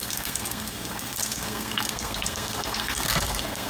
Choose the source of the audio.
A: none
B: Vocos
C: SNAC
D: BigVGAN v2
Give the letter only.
C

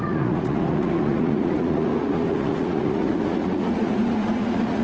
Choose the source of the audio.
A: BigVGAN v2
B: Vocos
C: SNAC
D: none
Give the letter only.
B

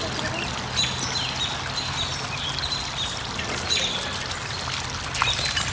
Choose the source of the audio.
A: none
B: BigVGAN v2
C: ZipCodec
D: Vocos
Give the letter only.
A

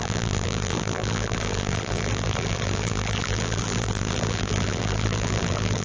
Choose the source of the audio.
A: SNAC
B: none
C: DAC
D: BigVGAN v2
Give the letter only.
D